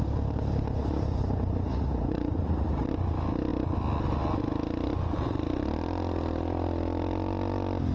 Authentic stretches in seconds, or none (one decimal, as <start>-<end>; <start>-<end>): 0.0-1.7; 2.9-7.9